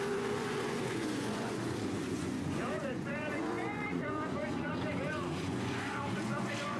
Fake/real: fake